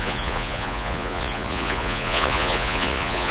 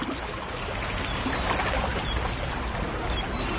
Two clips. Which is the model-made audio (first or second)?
first